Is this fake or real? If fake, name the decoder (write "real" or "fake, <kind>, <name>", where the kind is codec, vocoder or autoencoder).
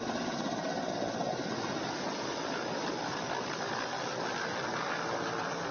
real